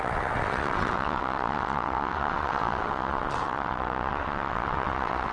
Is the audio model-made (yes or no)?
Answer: yes